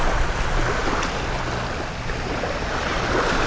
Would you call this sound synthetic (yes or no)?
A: no